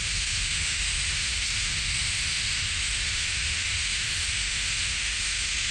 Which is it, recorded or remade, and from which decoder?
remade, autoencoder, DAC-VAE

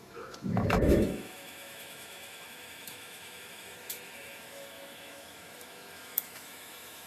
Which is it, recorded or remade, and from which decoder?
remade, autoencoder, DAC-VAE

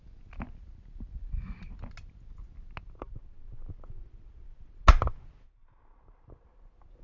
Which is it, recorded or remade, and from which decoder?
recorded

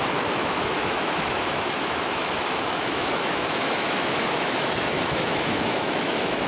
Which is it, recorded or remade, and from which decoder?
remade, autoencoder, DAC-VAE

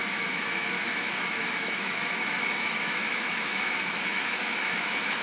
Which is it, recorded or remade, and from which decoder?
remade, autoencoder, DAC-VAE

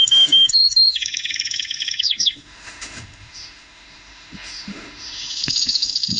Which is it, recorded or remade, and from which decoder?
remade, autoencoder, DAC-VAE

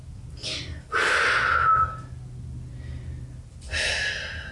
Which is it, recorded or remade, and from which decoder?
recorded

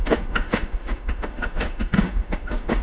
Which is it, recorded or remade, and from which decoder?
remade, autoencoder, DAC-VAE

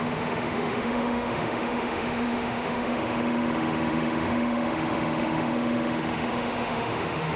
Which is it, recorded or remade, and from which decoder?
remade, autoencoder, DAC-VAE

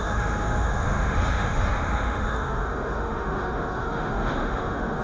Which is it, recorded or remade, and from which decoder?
remade, autoencoder, DAC-VAE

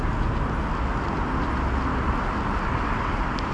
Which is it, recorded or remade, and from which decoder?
recorded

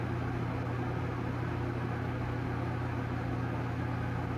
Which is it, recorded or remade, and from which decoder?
recorded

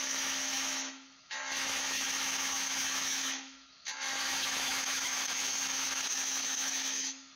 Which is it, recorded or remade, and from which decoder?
remade, autoencoder, DAC-VAE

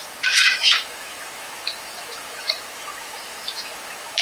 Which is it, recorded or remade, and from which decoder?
remade, autoencoder, DAC-VAE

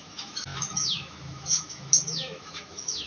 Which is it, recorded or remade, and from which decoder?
remade, autoencoder, DAC-VAE